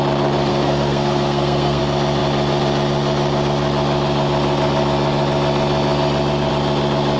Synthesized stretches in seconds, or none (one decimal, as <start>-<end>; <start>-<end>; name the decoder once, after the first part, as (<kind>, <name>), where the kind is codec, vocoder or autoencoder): 0.5-1.8 (codec, SNAC)